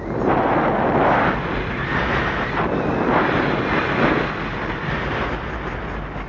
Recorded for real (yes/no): yes